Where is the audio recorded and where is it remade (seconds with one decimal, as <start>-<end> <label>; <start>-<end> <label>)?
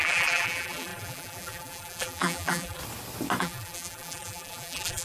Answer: 0.0-2.8 remade; 2.8-3.4 recorded; 3.4-5.0 remade